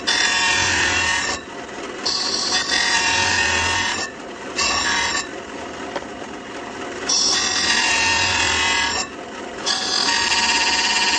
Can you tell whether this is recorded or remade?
recorded